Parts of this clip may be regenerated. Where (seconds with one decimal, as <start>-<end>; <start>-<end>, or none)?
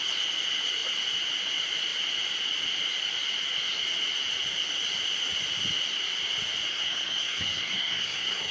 6.7-8.5